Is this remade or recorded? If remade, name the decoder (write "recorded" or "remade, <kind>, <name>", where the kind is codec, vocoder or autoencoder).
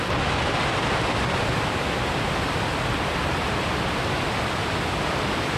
recorded